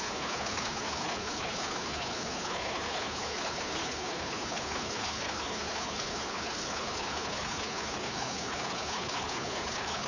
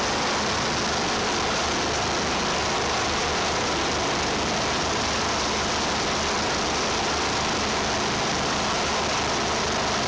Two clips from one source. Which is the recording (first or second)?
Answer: second